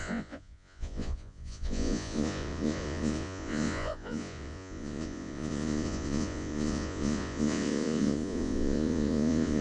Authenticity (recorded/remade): remade